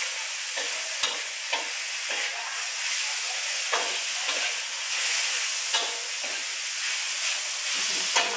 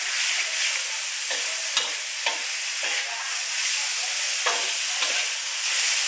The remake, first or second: first